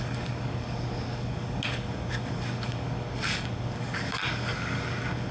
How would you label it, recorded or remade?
remade